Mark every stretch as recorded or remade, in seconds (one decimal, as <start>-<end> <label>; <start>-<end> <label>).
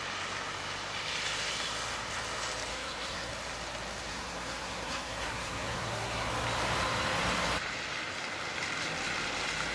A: 0.0-2.7 recorded; 2.7-3.3 remade; 3.3-4.1 recorded; 4.1-6.3 remade; 6.3-9.7 recorded